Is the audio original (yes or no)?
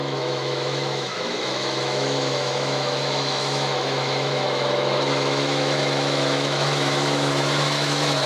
no